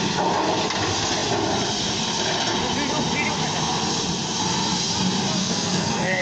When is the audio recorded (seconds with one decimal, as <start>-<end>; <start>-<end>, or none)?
0.0-5.4